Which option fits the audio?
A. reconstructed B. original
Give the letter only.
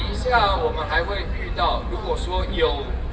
B